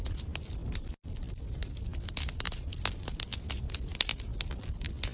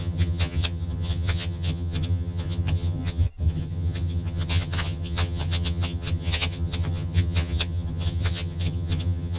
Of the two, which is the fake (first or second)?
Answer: second